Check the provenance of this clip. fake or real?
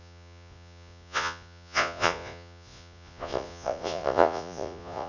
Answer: fake